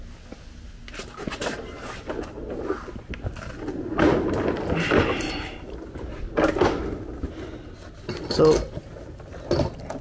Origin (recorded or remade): recorded